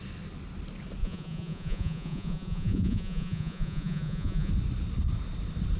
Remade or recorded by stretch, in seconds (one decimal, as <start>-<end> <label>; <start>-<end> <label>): 0.0-1.0 recorded; 1.0-4.5 remade; 4.5-5.8 recorded